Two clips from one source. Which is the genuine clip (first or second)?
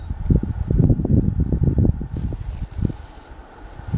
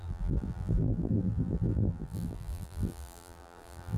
first